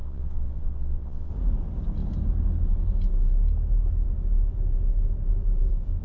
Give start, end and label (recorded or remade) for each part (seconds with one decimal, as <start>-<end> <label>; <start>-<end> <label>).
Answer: 0.0-1.3 remade; 1.3-6.0 recorded